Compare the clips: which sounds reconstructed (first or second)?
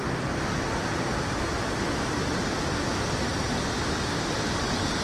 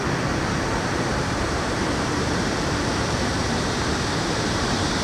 second